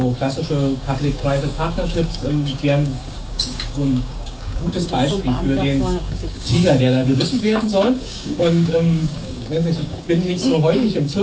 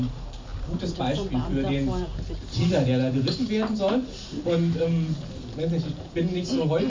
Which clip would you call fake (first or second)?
first